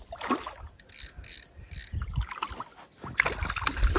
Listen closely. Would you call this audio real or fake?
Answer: real